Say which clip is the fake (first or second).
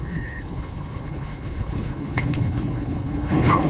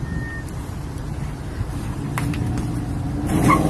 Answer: first